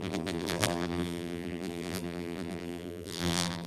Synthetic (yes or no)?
yes